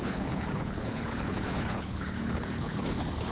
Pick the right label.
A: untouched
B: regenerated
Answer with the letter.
B